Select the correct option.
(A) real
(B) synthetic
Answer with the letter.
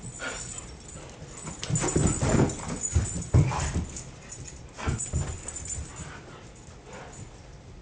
A